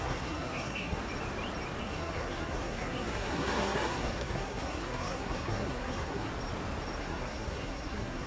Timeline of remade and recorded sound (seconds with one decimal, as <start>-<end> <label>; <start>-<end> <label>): 0.0-1.0 remade; 1.0-1.8 recorded; 1.8-6.3 remade; 6.3-7.0 recorded; 7.0-8.3 remade